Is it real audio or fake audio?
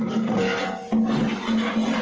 real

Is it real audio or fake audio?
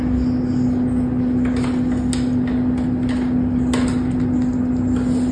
real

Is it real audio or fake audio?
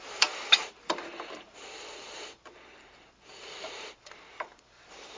fake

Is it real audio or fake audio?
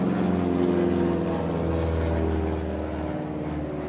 real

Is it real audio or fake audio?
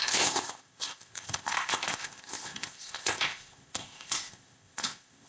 fake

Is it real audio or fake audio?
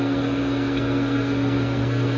fake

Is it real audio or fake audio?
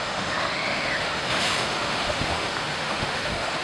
fake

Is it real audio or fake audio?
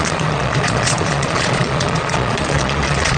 fake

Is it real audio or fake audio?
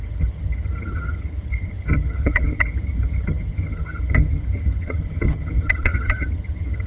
fake